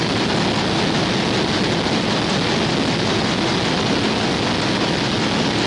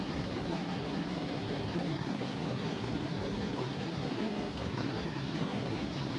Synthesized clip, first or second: second